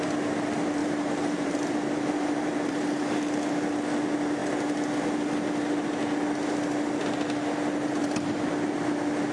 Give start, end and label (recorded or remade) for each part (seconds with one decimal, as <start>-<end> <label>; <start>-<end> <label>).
0.0-0.8 recorded; 0.8-3.4 remade; 3.4-8.0 recorded; 8.0-8.5 remade; 8.5-9.3 recorded